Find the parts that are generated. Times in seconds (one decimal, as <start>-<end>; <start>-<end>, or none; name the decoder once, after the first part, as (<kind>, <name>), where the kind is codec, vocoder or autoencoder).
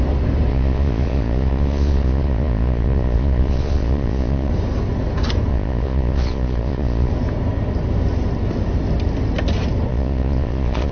0.5-4.5 (vocoder, Vocos); 5.5-7.1; 9.9-10.9